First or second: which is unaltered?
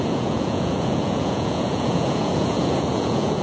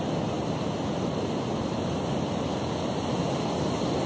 second